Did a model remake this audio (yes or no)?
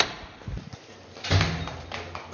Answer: no